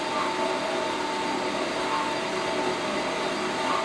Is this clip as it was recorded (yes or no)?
yes